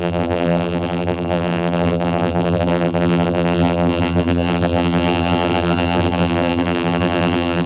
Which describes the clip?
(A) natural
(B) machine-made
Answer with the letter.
B